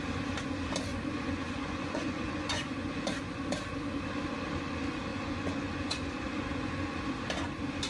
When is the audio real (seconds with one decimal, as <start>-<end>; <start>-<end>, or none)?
0.0-0.9; 3.4-5.1; 7.0-7.9